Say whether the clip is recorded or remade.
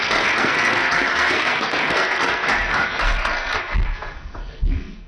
remade